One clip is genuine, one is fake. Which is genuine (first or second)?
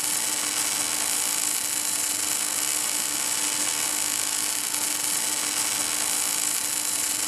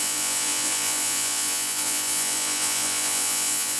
first